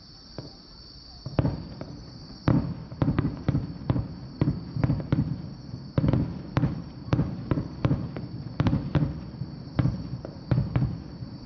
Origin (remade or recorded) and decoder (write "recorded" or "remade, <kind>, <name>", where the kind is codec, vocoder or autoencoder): remade, vocoder, BigVGAN v2